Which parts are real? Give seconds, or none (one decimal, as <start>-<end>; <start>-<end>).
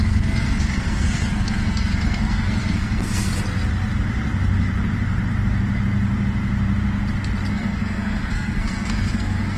3.3-7.5